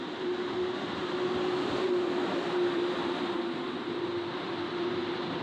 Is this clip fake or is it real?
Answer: fake